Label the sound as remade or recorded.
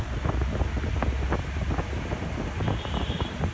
recorded